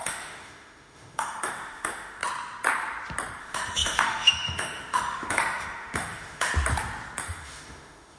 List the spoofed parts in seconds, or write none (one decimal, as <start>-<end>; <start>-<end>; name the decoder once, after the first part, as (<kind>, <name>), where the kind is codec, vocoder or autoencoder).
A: 0.0-2.2 (autoencoder, DAC-VAE); 3.4-6.5; 7.2-8.2